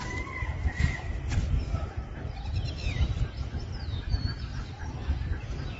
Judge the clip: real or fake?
fake